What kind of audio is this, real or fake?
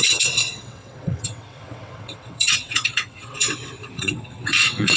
fake